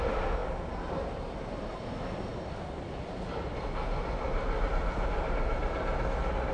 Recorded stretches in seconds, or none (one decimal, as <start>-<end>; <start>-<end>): 0.0-6.5